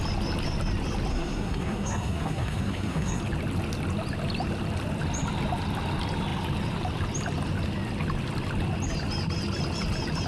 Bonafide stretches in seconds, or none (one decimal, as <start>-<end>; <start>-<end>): 0.0-1.1; 3.2-10.3